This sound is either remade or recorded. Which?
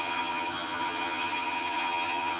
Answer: remade